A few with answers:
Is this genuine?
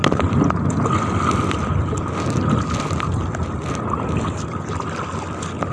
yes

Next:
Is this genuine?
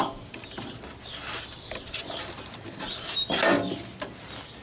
yes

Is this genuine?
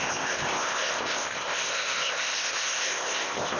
no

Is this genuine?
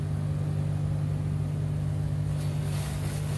yes